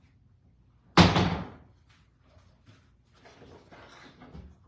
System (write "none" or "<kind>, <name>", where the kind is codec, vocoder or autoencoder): none